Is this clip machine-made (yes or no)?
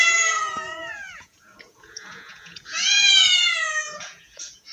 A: yes